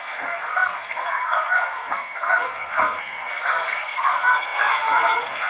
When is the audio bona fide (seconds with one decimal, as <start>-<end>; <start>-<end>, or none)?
none